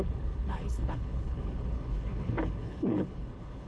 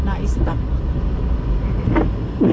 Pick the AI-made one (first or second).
first